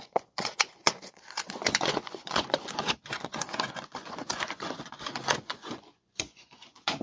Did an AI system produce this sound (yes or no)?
yes